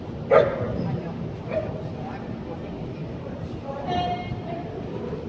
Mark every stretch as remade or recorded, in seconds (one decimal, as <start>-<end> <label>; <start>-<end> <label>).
0.0-3.0 recorded; 3.0-3.8 remade; 3.8-5.3 recorded